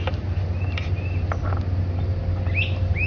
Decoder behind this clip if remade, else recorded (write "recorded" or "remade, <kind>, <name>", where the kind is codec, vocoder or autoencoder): recorded